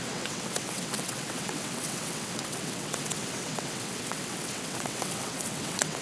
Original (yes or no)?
no